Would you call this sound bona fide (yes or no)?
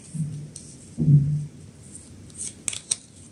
yes